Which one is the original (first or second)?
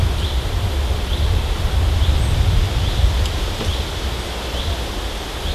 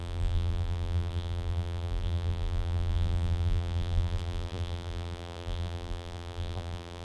first